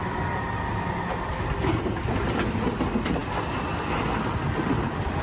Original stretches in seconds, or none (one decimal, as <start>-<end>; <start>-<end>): 0.0-5.2